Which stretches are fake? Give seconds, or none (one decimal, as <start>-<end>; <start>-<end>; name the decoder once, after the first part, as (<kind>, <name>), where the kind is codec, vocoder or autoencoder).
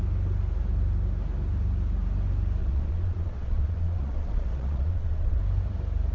2.6-5.4 (vocoder, Vocos)